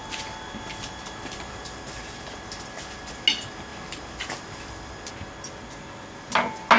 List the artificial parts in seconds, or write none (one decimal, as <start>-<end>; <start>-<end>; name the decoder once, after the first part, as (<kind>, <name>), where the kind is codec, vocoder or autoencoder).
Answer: none